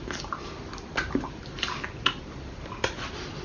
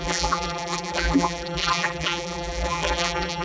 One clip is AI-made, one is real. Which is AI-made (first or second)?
second